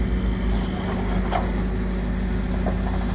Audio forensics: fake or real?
real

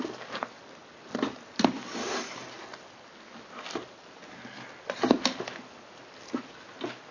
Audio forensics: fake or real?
real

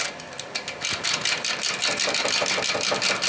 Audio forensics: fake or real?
real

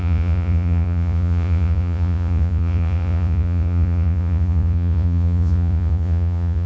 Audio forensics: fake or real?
fake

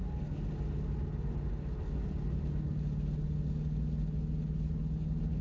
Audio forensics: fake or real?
real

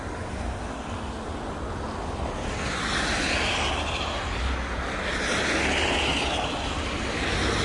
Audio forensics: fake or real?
real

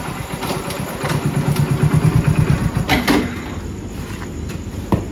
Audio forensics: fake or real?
real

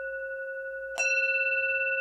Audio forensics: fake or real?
real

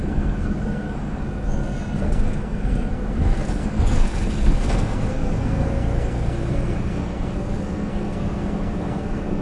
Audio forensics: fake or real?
fake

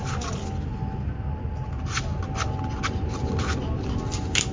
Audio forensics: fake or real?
real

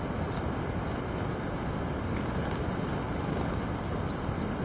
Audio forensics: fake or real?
real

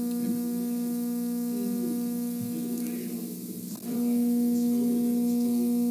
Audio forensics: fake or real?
real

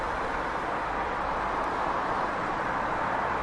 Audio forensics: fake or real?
real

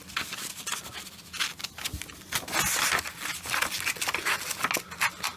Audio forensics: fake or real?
real